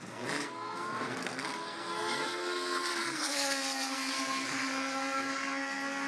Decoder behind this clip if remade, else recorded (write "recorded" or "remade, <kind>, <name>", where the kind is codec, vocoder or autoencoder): remade, codec, SNAC